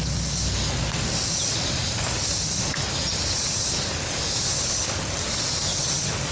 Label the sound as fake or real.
real